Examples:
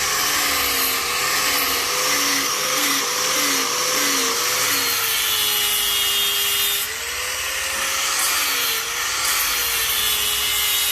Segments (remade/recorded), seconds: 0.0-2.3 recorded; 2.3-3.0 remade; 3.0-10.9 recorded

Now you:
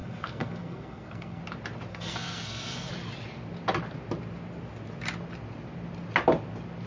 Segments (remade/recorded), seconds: 0.0-1.4 remade; 1.4-1.9 recorded; 1.9-2.9 remade; 2.9-6.9 recorded